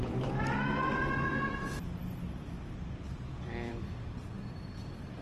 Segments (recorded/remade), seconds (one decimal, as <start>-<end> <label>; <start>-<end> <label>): 0.0-5.2 recorded